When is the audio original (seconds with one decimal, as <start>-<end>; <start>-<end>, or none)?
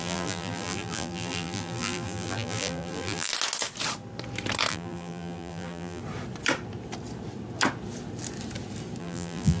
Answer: 3.3-4.7; 6.0-9.0